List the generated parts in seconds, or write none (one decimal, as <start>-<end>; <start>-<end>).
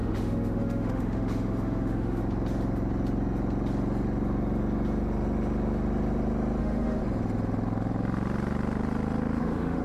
0.0-2.2; 6.6-7.0; 9.4-9.8